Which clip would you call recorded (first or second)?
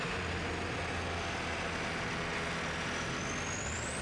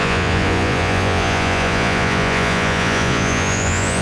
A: first